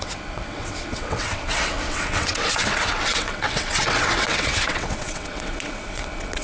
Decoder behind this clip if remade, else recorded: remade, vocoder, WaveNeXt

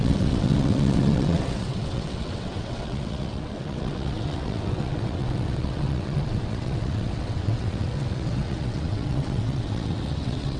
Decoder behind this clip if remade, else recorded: remade, vocoder, WaveNeXt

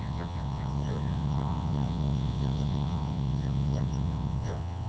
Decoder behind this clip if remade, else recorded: remade, vocoder, WaveNeXt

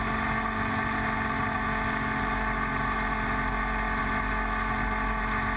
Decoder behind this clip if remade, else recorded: recorded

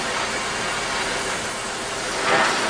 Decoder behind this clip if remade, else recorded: recorded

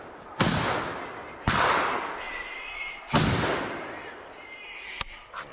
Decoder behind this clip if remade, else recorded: recorded